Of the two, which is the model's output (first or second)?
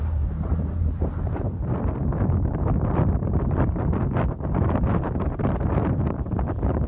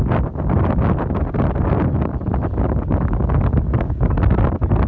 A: first